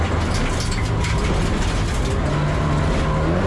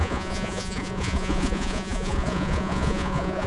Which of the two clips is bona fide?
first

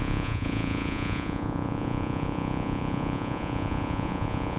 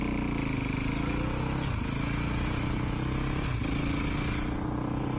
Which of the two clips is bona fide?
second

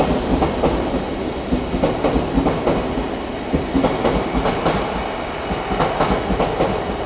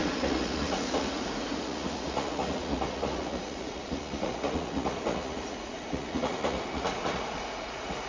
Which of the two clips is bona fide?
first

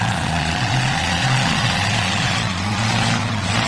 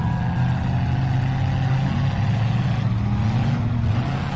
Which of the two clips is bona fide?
second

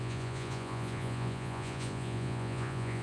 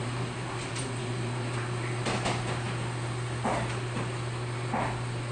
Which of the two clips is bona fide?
second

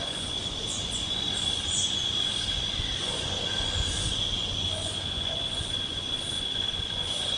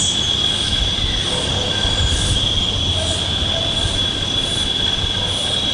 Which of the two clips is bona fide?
second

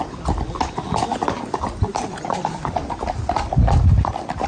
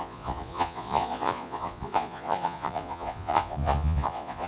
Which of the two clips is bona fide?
first